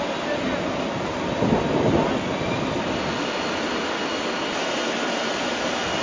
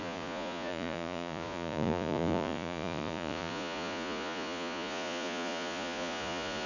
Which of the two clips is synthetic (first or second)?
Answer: second